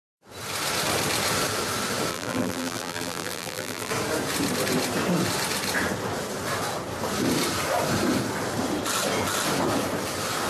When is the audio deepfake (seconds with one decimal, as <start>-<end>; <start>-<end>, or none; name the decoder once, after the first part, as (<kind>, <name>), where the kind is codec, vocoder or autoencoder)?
2.1-3.9 (vocoder, BigVGAN v2)